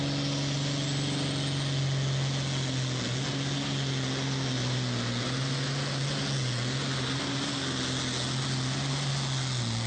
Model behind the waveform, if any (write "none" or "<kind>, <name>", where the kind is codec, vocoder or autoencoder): none